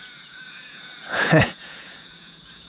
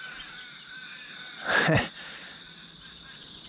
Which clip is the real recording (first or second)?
second